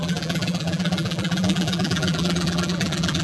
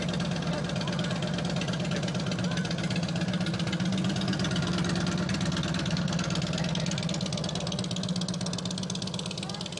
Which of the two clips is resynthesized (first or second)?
first